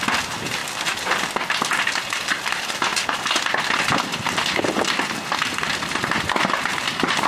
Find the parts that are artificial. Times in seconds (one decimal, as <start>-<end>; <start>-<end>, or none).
none